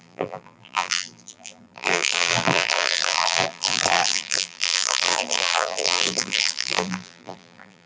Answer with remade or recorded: remade